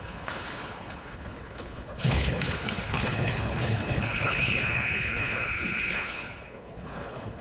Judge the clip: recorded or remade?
remade